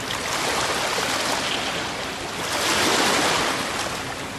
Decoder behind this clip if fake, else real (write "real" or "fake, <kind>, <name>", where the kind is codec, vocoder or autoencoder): real